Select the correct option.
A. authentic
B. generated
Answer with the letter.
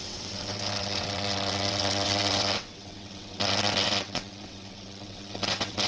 B